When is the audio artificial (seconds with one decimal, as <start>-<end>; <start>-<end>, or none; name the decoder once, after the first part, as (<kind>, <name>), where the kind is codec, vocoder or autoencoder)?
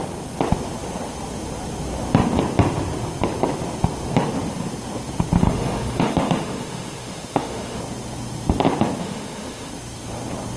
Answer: 5.4-7.8 (autoencoder, DAC-VAE); 9.0-9.7